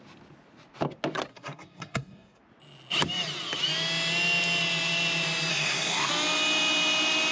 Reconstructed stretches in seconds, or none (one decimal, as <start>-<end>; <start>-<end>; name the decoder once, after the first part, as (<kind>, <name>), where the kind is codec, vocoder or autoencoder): 1.3-2.4 (codec, SNAC); 5.5-6.1